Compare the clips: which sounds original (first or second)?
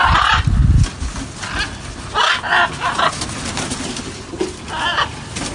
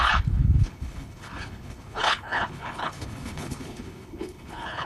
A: first